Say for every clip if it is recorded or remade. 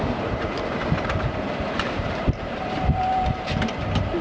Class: remade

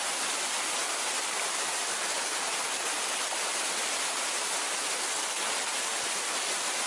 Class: recorded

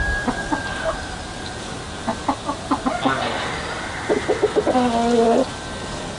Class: recorded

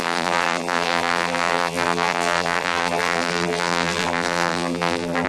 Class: remade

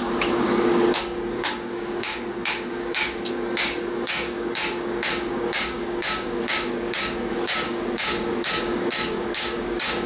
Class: remade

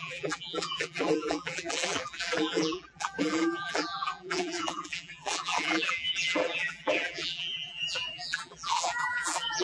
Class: remade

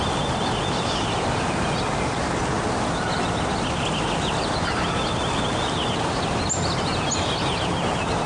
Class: recorded